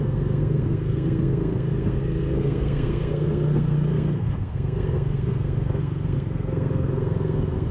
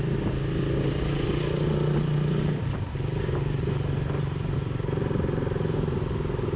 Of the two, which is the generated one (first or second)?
first